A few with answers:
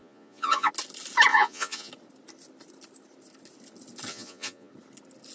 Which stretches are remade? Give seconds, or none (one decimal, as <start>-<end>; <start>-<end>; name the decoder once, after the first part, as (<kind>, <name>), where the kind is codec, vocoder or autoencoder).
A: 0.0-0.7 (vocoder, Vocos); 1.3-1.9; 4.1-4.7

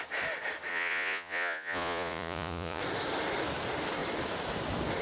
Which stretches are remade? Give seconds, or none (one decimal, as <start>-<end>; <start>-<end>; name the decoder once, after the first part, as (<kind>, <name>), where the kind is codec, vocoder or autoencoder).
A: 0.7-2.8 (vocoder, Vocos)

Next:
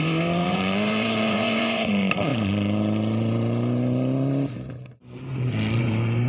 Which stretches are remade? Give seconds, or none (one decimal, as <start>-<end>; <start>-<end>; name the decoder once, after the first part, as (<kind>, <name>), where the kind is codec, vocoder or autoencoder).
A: 0.0-2.3 (vocoder, Vocos); 5.8-6.3